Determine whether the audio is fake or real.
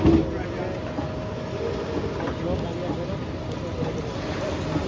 real